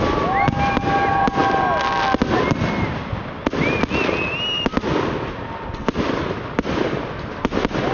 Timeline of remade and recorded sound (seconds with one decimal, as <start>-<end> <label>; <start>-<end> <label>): 0.0-7.9 recorded